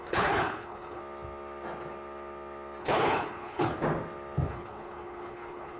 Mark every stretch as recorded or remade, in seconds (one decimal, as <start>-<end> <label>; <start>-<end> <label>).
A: 0.0-1.0 remade; 1.0-2.8 recorded; 2.8-3.7 remade; 3.7-4.5 recorded; 4.5-5.8 remade